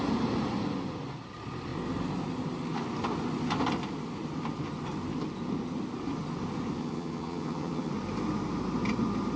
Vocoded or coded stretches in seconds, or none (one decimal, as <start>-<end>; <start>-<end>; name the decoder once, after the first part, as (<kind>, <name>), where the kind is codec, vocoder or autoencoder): 6.8-7.9 (vocoder, HiFi-GAN)